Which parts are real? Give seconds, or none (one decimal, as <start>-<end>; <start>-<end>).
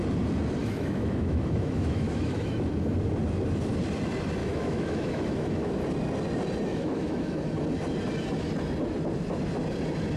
0.0-0.6; 2.7-4.4; 5.8-6.7; 7.4-10.2